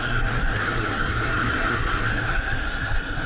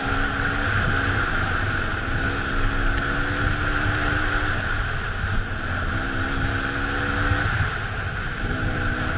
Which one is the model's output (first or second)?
first